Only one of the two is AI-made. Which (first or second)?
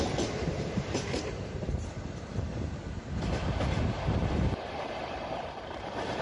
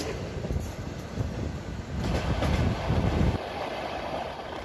first